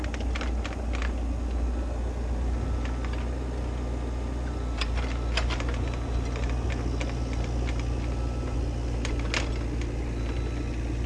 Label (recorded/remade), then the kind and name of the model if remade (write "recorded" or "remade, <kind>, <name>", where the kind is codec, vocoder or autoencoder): recorded